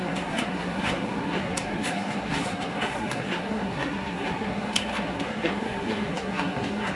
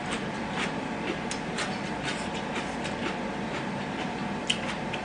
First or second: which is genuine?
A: second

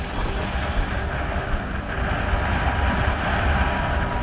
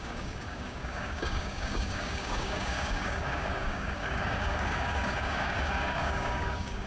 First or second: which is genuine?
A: first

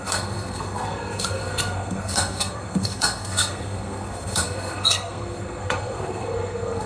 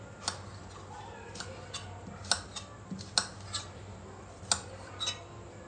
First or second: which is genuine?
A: second